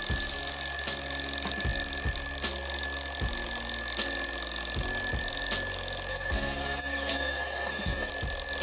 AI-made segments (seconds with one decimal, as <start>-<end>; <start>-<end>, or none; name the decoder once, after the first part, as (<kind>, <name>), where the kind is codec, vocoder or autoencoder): 6.1-8.1 (codec, SNAC)